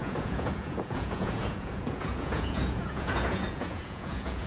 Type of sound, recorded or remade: remade